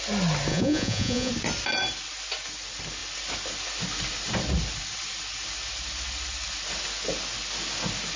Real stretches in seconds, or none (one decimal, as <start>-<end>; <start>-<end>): 0.0-0.5; 1.3-8.2